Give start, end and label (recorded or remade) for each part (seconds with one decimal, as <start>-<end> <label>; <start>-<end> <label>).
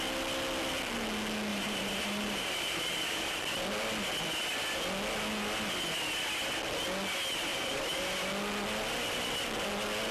0.0-1.5 recorded; 1.5-3.5 remade; 3.5-7.5 recorded; 7.5-8.0 remade; 8.0-10.1 recorded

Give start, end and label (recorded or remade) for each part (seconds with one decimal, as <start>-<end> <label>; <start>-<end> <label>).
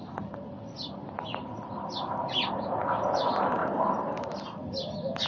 0.0-3.6 recorded; 3.6-4.3 remade; 4.3-5.3 recorded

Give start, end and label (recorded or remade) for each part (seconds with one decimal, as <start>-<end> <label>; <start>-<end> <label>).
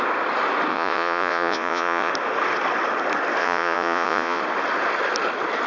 0.0-0.7 recorded; 0.7-2.1 remade; 2.1-3.4 recorded; 3.4-4.4 remade; 4.4-5.7 recorded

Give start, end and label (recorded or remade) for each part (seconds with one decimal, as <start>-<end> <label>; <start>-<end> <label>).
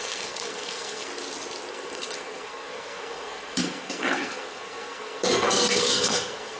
0.0-1.1 remade; 1.1-1.7 recorded; 1.7-6.6 remade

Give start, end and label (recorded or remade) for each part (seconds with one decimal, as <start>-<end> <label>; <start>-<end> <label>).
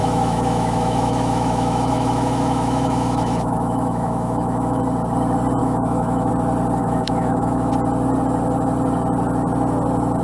0.0-4.8 remade; 4.8-5.6 recorded; 5.6-6.3 remade; 6.3-6.8 recorded; 6.8-7.7 remade; 7.7-10.2 recorded